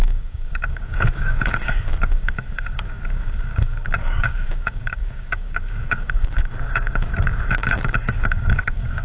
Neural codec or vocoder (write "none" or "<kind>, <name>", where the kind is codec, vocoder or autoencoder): codec, DAC